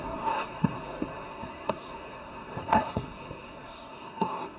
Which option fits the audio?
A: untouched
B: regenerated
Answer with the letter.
B